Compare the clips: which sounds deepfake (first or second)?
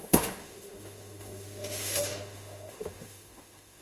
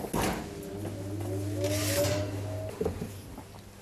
first